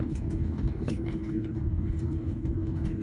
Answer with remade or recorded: remade